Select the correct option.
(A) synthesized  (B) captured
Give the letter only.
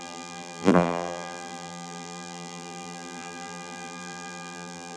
A